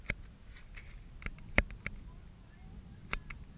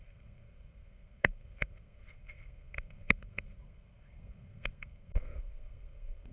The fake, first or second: second